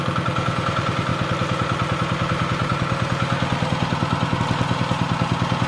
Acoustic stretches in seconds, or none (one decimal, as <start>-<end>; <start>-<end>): 0.0-5.7